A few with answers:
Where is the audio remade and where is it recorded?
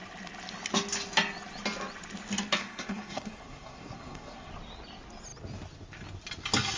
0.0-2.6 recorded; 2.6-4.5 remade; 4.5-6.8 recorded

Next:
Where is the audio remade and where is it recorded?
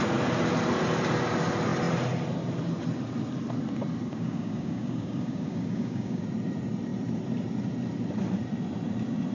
0.0-4.1 recorded; 4.1-6.2 remade; 6.2-9.3 recorded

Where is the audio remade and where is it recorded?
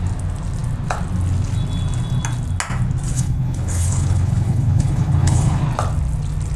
0.0-3.1 recorded; 3.1-5.6 remade; 5.6-6.6 recorded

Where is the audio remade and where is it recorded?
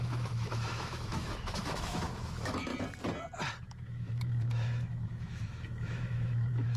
0.0-2.7 remade; 2.7-3.6 recorded; 3.6-6.8 remade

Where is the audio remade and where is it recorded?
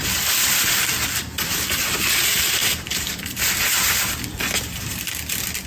0.0-0.9 remade; 0.9-2.6 recorded; 2.6-3.4 remade; 3.4-5.7 recorded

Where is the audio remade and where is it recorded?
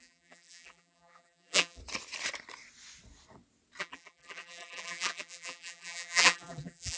0.0-1.8 remade; 1.8-3.8 recorded; 3.8-7.0 remade